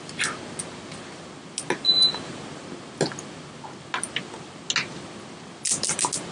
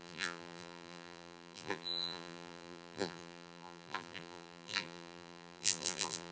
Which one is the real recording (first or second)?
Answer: first